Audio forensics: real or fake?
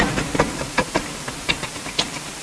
fake